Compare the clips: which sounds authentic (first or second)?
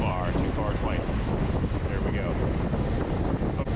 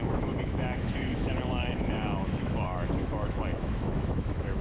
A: first